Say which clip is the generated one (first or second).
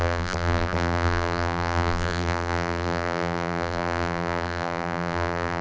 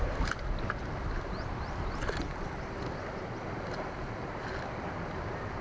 first